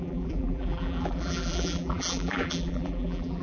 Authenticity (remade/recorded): remade